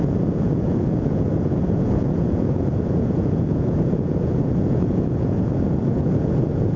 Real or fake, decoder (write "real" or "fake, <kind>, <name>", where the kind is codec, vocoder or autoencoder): fake, vocoder, Vocos